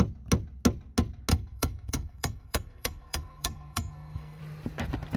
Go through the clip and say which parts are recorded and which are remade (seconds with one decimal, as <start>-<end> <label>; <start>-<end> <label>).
0.0-1.3 recorded; 1.3-4.4 remade; 4.4-5.2 recorded